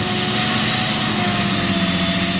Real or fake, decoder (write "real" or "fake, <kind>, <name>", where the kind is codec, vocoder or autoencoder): real